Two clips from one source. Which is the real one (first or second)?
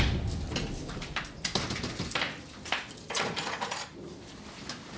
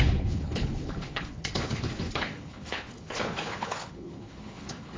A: first